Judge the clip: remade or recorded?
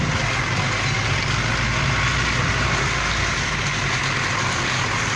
recorded